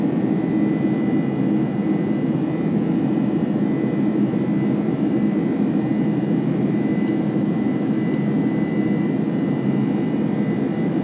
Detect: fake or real real